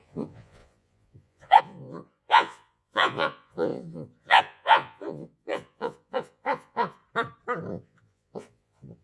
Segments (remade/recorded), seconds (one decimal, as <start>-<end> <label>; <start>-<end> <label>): 0.0-7.0 remade; 7.0-7.7 recorded; 7.7-9.0 remade